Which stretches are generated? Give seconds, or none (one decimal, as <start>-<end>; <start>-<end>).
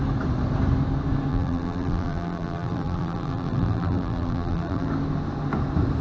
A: 1.3-4.9